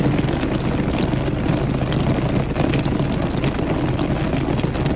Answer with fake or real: real